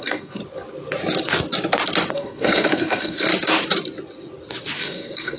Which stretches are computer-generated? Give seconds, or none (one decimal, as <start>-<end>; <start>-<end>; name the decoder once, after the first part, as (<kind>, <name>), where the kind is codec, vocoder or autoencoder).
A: 0.0-0.4 (codec, SNAC); 2.1-3.3; 4.8-5.4